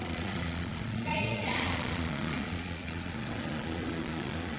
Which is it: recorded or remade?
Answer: remade